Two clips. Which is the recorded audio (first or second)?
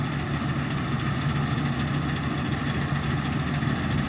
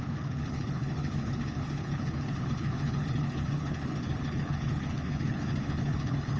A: first